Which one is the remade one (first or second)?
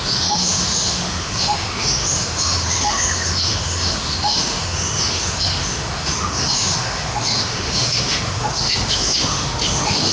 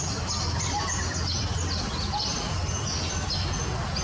first